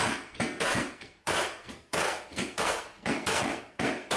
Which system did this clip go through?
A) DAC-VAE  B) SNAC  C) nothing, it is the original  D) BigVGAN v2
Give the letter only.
B